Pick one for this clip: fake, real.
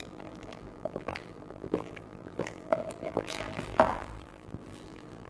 fake